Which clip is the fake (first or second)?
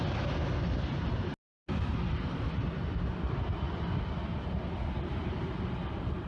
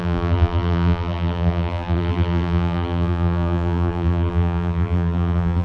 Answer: second